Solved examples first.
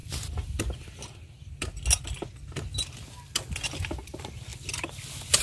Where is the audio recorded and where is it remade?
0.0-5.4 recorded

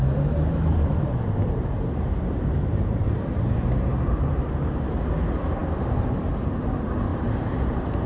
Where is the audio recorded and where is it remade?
0.0-0.5 recorded; 0.5-5.1 remade; 5.1-7.1 recorded; 7.1-8.1 remade

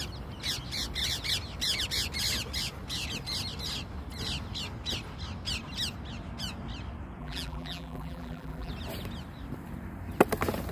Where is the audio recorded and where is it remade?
0.0-7.2 recorded; 7.2-8.7 remade; 8.7-10.7 recorded

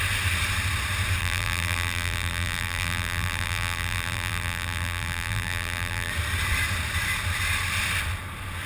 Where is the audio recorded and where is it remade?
0.0-1.2 recorded; 1.2-6.1 remade; 6.1-8.7 recorded